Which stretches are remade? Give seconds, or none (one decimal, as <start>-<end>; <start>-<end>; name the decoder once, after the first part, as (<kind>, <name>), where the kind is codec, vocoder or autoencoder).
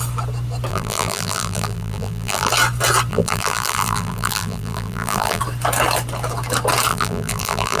0.7-2.5 (vocoder, BigVGAN v2); 3.1-5.4; 6.9-7.8